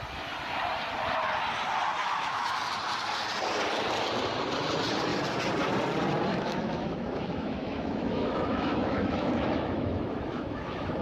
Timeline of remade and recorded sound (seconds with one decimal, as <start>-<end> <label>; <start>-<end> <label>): 0.0-2.0 recorded; 2.0-2.6 remade; 2.6-6.3 recorded; 6.3-11.0 remade